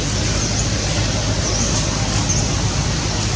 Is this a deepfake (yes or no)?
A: no